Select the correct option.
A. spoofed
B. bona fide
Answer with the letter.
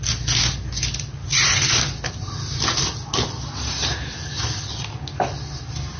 B